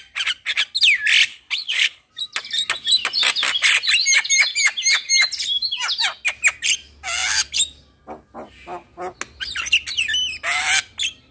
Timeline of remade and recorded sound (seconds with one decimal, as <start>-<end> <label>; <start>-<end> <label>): 0.0-1.3 recorded; 1.3-2.1 remade; 2.1-11.3 recorded